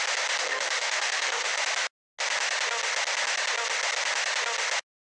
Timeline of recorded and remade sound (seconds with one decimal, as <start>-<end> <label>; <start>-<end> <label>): 0.0-0.8 recorded; 0.8-1.6 remade; 1.6-5.1 recorded